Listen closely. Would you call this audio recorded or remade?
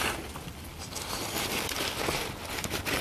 recorded